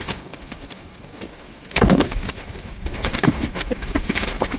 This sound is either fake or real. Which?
fake